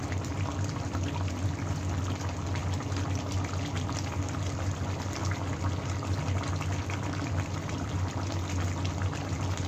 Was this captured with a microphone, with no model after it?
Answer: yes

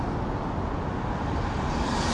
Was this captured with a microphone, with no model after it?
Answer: yes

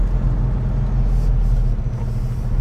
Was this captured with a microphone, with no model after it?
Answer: yes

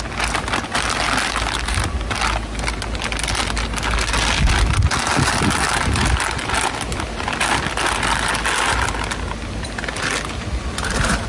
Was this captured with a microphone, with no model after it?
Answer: yes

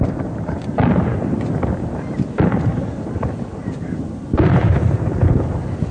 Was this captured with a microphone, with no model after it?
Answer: yes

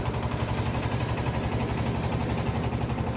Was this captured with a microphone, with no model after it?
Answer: yes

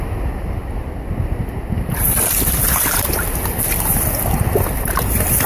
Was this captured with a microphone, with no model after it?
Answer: yes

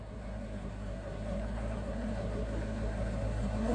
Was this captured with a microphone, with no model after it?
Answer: no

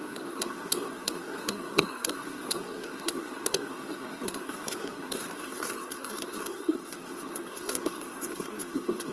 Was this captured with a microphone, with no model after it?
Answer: no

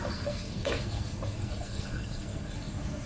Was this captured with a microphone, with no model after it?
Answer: no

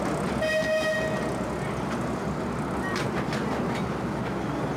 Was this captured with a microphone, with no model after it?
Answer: yes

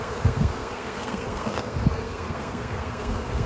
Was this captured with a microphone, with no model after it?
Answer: no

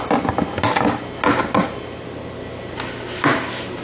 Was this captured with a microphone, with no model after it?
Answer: yes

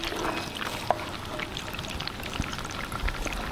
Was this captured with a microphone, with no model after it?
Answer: yes